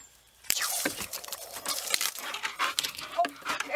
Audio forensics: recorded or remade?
remade